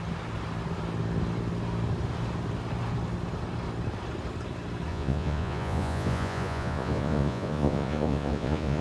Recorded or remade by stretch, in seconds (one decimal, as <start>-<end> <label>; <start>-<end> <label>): 0.0-4.9 recorded; 4.9-8.8 remade